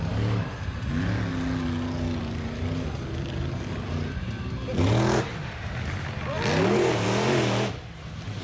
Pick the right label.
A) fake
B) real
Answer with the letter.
B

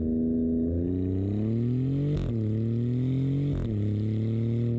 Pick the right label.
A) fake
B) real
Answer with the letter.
B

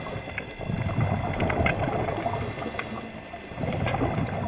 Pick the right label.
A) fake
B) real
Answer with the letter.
B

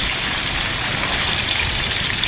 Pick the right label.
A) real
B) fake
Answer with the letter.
A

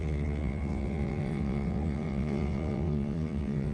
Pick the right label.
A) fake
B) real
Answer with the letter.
A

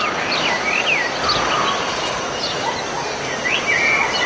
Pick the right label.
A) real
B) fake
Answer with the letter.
A